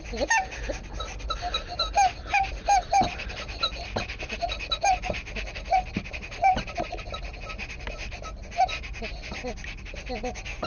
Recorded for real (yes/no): yes